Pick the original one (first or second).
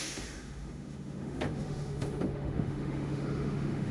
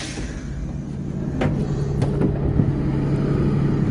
second